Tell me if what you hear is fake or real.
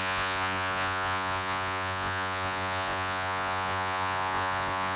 fake